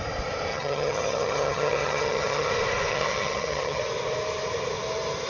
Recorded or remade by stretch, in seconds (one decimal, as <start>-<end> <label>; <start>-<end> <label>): 0.0-0.5 recorded; 0.5-2.5 remade; 2.5-2.9 recorded; 2.9-3.8 remade; 3.8-5.3 recorded

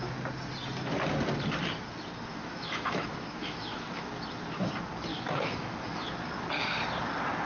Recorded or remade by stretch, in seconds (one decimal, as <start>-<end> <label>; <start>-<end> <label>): 0.0-2.3 recorded; 2.3-4.1 remade; 4.1-5.1 recorded; 5.1-6.1 remade; 6.1-7.5 recorded

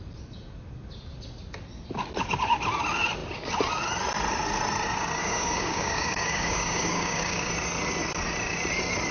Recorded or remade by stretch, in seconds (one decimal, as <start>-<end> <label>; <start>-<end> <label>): 0.0-5.2 recorded; 5.2-7.5 remade; 7.5-9.1 recorded